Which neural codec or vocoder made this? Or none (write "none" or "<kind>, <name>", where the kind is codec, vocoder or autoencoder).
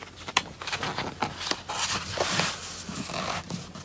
none